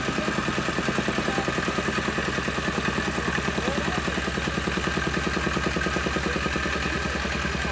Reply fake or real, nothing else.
real